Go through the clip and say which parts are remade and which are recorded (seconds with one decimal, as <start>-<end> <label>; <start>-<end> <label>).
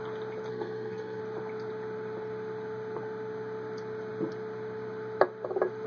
0.0-0.5 recorded; 0.5-1.2 remade; 1.2-5.9 recorded